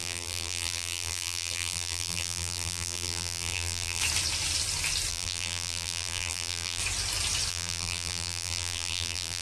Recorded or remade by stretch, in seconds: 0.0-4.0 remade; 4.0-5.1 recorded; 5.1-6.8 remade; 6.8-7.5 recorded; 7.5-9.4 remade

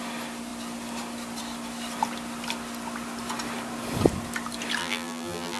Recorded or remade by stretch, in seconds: 0.0-4.8 recorded; 4.8-5.6 remade

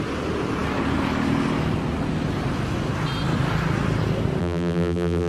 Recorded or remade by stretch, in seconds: 0.0-4.4 recorded; 4.4-5.3 remade

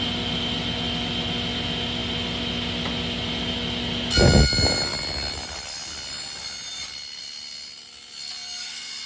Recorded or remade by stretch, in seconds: 0.0-4.9 recorded; 4.9-6.2 remade; 6.2-6.7 recorded; 6.7-7.2 remade; 7.2-9.1 recorded

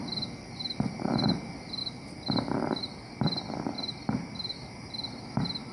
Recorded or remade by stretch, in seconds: 0.0-5.7 recorded

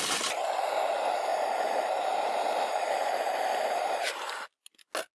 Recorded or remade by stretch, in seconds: 0.0-1.3 recorded; 1.3-4.1 remade; 4.1-5.1 recorded

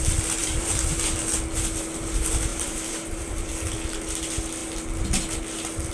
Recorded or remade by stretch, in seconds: 0.0-0.4 recorded; 0.4-1.2 remade; 1.2-2.5 recorded; 2.5-3.5 remade; 3.5-5.9 recorded